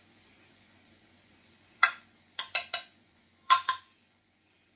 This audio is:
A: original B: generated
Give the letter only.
B